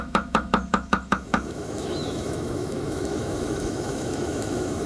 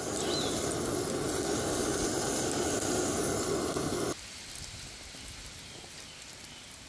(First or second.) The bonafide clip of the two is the second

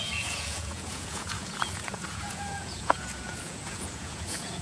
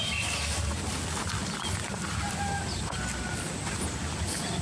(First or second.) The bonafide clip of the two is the second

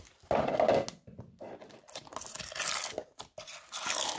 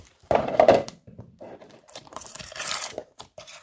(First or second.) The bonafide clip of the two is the first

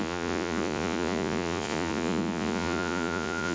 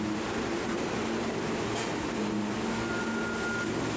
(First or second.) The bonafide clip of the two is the second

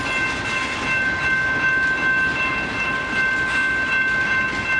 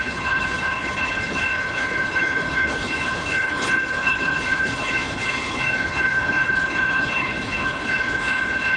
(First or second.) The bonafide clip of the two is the first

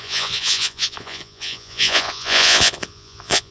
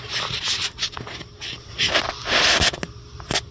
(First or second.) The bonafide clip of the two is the second